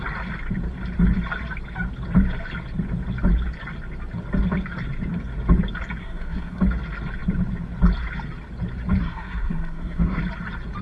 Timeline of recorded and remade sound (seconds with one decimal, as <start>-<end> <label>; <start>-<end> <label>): 0.0-6.0 recorded; 6.0-6.6 remade; 6.6-9.0 recorded; 9.0-10.2 remade; 10.2-10.8 recorded